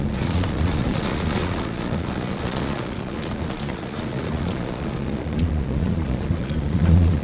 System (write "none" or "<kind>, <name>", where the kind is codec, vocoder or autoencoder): vocoder, Vocos